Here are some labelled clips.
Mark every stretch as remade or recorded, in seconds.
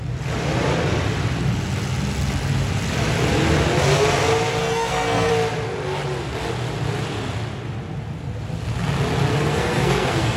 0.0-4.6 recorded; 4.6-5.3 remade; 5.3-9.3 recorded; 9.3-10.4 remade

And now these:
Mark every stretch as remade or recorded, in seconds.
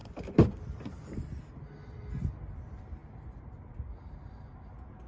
0.0-5.1 recorded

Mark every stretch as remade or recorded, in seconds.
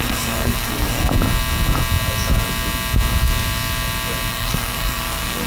0.0-1.0 remade; 1.0-4.3 recorded; 4.3-5.5 remade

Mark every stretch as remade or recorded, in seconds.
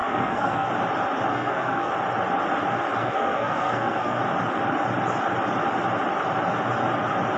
0.0-0.7 remade; 0.7-1.3 recorded; 1.3-1.9 remade; 1.9-3.0 recorded; 3.0-4.2 remade; 4.2-7.4 recorded